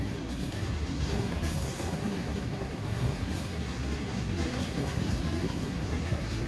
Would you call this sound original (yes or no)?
no